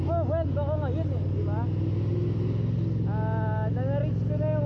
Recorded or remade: recorded